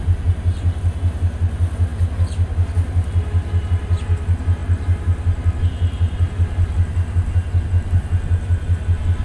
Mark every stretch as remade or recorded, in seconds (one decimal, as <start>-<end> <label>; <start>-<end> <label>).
0.0-9.2 recorded